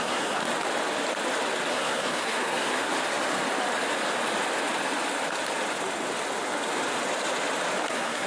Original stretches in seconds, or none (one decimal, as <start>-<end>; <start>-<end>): 0.4-1.7; 2.9-7.9